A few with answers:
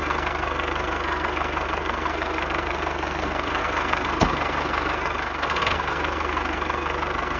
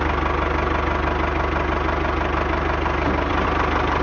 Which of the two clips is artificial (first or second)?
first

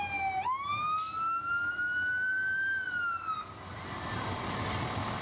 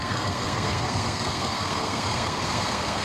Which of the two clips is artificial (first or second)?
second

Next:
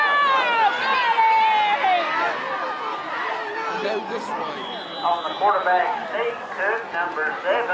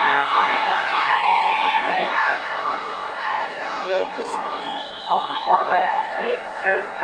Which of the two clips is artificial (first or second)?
second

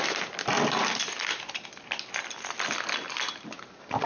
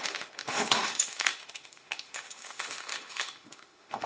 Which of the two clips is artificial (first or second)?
second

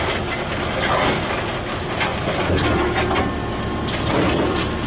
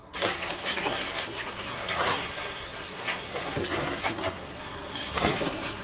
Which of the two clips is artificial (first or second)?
second